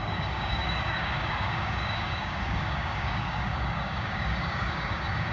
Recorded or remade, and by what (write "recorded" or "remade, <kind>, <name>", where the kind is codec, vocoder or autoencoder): remade, codec, DAC